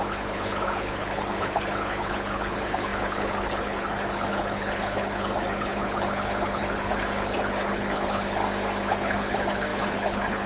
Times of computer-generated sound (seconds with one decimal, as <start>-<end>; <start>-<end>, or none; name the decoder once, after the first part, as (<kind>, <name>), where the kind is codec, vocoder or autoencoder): 0.0-8.4 (codec, HILCodec); 8.9-10.5